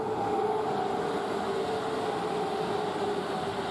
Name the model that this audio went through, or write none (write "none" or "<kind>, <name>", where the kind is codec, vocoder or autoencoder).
none